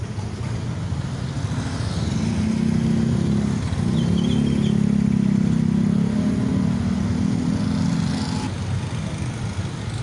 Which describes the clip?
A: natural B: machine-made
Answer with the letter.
A